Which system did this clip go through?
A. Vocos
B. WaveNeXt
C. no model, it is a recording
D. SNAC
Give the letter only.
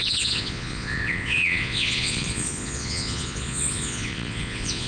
A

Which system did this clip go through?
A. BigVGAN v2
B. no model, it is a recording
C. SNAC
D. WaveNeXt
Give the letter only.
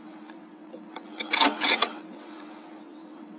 D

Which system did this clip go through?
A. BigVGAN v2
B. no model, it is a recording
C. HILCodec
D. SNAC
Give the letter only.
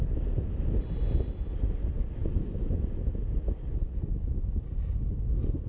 B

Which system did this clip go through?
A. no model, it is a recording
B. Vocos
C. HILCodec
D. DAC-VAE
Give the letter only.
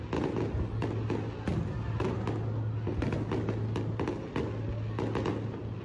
A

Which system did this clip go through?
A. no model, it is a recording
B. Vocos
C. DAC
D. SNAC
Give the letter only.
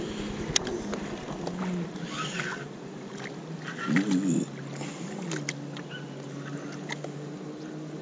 A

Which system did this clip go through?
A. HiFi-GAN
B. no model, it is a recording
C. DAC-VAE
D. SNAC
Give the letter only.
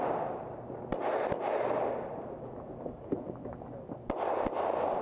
B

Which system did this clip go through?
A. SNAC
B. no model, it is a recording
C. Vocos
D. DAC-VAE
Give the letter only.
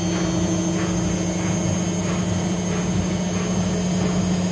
B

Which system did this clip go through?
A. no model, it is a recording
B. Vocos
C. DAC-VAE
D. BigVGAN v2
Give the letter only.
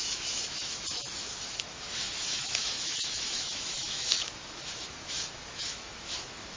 C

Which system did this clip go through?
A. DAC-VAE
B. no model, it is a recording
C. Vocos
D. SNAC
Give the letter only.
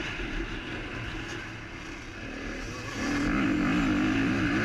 B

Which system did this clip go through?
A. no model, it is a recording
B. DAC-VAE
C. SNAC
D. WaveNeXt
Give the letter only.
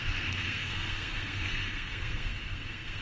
C